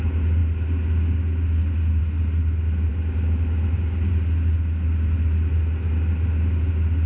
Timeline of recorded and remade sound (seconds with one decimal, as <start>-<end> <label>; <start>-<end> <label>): 0.0-7.1 recorded